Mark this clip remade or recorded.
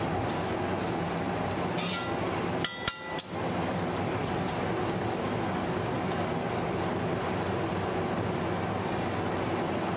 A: recorded